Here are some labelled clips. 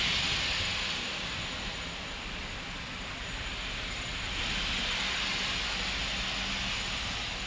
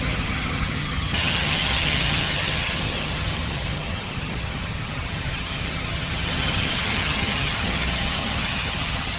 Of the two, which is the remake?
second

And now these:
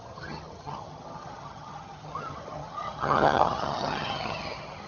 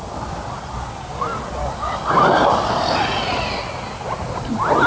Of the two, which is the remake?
first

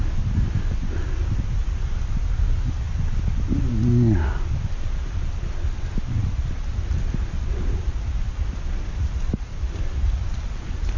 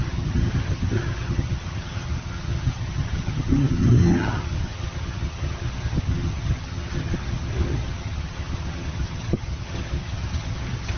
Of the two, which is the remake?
second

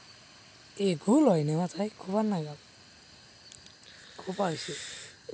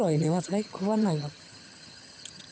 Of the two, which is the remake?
second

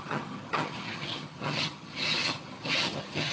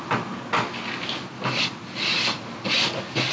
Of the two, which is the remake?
first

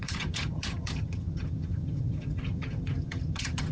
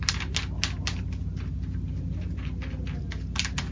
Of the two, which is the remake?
first